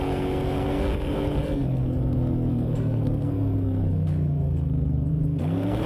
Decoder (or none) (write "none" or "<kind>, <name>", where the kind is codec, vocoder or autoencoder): codec, SNAC